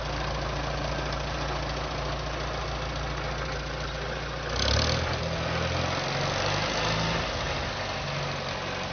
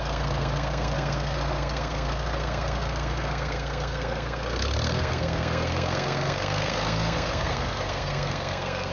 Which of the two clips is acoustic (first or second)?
first